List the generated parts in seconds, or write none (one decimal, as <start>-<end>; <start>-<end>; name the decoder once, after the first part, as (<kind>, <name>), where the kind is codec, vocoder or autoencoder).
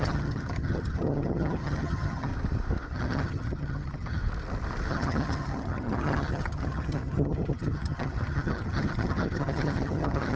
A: 0.0-2.3 (vocoder, HiFi-GAN); 2.9-4.2; 4.9-10.4